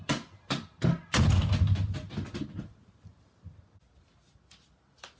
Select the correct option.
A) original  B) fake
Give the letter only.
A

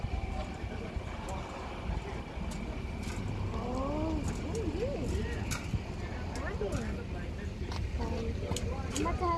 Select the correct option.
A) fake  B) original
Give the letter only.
B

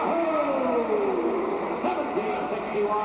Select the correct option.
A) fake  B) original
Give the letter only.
B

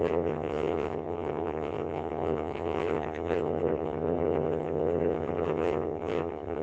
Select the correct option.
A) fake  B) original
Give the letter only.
A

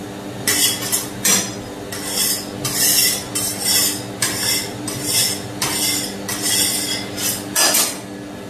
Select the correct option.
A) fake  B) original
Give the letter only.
B